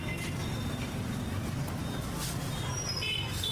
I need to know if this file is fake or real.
real